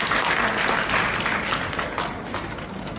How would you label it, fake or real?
real